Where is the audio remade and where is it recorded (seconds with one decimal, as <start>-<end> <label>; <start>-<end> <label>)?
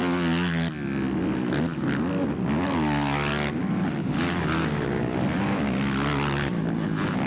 0.0-7.3 recorded